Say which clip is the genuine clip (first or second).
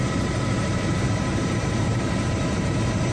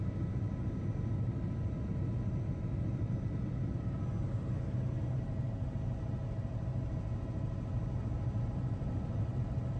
second